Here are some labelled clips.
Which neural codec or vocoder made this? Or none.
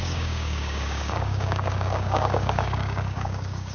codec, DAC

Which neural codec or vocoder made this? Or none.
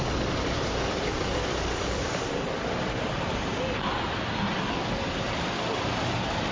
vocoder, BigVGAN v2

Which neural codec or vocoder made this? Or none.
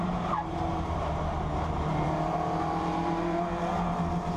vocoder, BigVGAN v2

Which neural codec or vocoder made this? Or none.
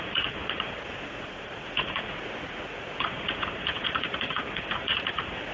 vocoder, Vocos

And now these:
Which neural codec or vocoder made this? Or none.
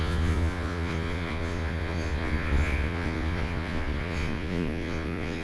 vocoder, Vocos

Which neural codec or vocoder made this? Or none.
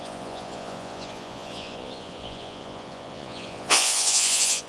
vocoder, Vocos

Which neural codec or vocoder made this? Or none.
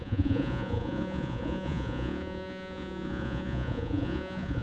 vocoder, Vocos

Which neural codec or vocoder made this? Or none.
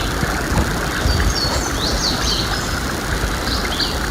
none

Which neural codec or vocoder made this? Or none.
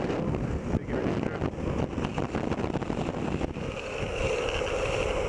none